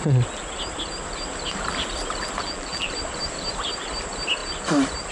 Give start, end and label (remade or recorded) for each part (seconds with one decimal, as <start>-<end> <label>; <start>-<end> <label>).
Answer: 0.0-2.4 recorded; 2.4-2.9 remade; 2.9-5.1 recorded